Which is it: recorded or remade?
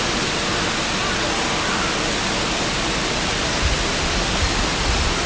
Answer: recorded